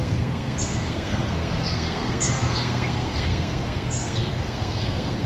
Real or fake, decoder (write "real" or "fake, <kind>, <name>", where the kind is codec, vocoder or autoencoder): fake, codec, SNAC